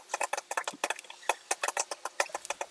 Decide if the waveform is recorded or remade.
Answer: recorded